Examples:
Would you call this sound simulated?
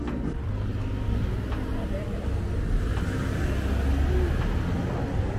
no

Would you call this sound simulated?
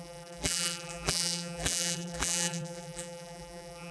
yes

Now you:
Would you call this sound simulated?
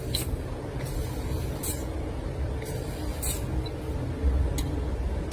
no